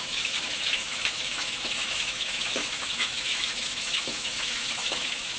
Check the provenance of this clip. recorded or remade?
remade